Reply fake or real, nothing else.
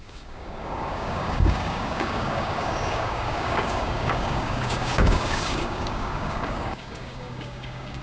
fake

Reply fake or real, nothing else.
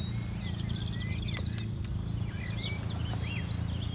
real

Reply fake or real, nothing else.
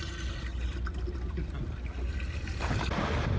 real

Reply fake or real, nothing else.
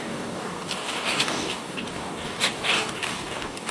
fake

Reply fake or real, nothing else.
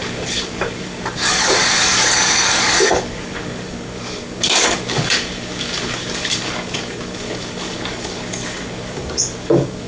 fake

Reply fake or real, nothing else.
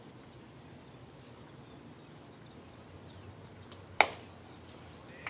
real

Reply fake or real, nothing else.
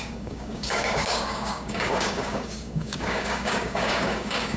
fake